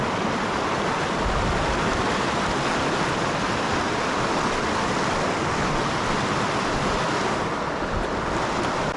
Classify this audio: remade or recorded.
recorded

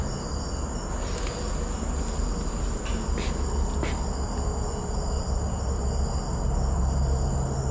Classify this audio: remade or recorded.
recorded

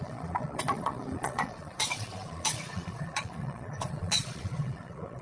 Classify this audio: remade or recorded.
remade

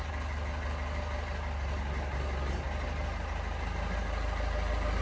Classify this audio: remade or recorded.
recorded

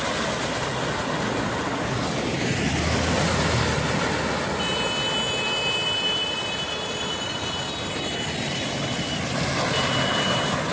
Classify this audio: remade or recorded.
recorded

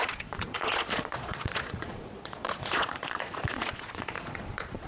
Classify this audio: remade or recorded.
remade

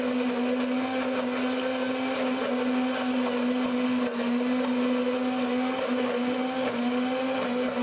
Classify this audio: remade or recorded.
recorded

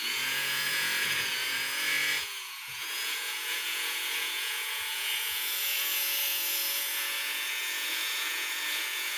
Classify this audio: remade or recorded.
remade